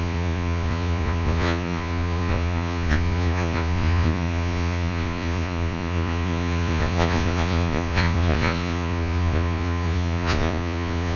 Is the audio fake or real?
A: fake